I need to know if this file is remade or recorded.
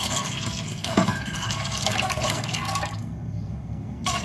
remade